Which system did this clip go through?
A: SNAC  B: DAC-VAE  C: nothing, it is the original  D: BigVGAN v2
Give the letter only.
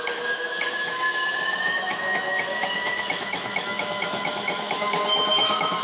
B